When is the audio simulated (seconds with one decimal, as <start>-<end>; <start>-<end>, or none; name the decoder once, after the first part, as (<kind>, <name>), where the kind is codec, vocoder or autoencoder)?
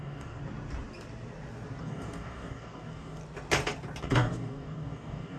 0.0-0.4 (codec, DAC); 1.8-3.2; 4.0-5.4